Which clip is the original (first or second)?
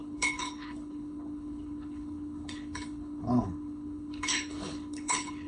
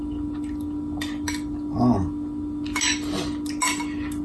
second